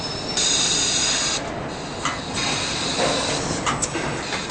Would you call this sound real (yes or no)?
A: yes